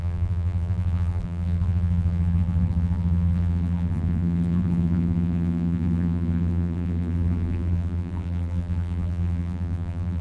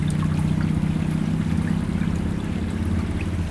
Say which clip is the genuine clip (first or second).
second